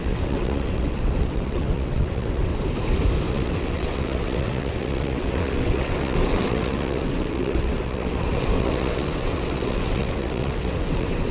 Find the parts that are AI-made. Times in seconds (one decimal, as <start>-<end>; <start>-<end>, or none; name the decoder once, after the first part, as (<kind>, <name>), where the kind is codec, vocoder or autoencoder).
0.0-2.5 (vocoder, WaveNeXt); 3.3-11.3